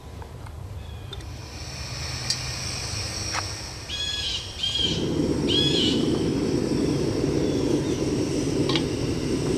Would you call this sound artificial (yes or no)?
no